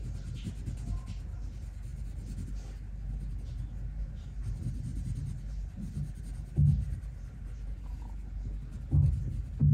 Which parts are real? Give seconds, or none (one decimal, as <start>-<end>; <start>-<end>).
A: 0.0-9.7